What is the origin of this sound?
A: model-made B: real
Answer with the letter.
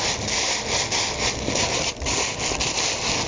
B